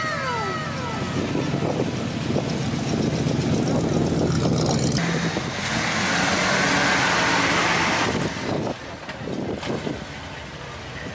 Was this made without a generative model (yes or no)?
yes